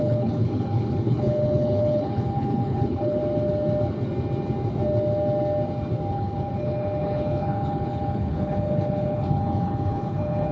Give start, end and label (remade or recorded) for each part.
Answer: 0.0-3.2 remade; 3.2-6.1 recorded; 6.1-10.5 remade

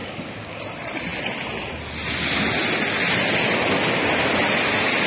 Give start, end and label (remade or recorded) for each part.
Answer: 0.0-0.6 remade; 0.6-5.1 recorded